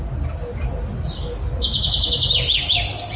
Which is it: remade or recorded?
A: recorded